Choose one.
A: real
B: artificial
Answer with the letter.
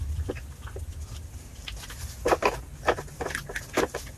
A